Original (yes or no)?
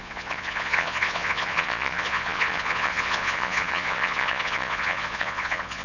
no